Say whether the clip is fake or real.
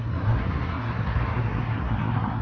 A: fake